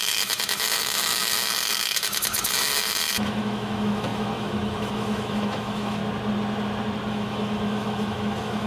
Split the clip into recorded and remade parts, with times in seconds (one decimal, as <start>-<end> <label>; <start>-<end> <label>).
0.0-6.0 remade; 6.0-7.1 recorded; 7.1-8.7 remade